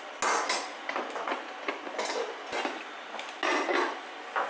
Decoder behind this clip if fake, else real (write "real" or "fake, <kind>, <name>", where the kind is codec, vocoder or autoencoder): real